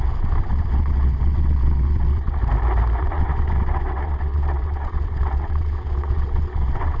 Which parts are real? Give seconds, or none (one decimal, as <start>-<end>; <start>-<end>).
2.4-3.0